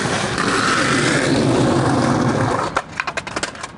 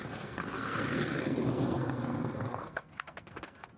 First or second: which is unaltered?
first